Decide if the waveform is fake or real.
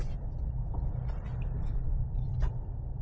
real